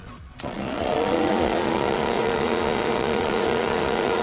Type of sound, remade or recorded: remade